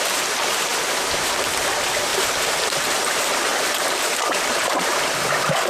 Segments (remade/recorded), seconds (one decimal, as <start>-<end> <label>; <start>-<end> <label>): 0.0-2.1 recorded; 2.1-5.7 remade